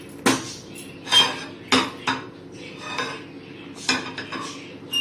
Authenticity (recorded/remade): recorded